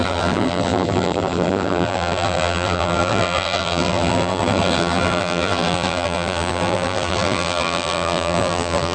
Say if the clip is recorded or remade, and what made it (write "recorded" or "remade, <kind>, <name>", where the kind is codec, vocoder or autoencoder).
remade, vocoder, BigVGAN v2